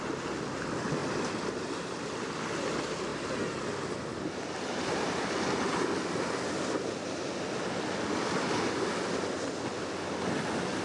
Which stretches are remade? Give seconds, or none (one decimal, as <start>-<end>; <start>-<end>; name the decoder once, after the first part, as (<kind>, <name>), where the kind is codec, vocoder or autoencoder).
1.0-2.6 (vocoder, BigVGAN v2); 3.1-7.5